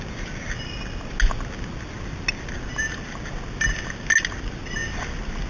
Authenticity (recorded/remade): recorded